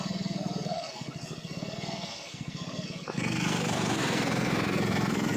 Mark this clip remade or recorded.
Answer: remade